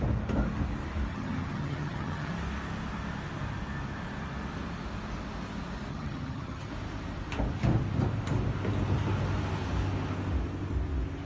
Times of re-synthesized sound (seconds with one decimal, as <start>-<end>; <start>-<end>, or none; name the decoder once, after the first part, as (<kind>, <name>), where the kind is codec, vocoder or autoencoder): 1.1-2.3 (vocoder, HiFi-GAN); 5.9-6.7